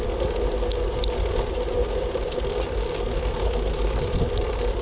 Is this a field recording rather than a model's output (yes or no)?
yes